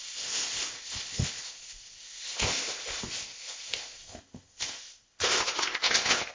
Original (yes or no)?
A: no